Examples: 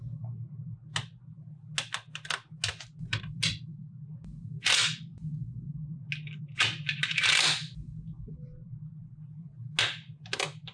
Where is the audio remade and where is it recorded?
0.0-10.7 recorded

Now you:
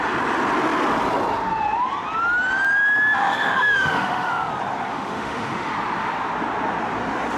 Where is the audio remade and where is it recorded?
0.0-3.2 recorded; 3.2-4.5 remade; 4.5-4.9 recorded; 4.9-5.7 remade; 5.7-7.4 recorded

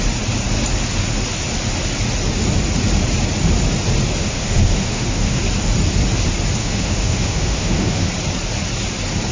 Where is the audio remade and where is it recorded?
0.0-4.2 recorded; 4.2-5.4 remade; 5.4-6.6 recorded; 6.6-8.1 remade; 8.1-9.3 recorded